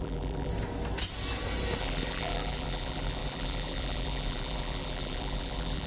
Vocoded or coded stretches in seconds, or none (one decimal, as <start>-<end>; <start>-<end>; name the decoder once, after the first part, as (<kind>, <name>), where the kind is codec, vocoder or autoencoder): 0.0-0.5 (vocoder, BigVGAN v2); 1.8-5.9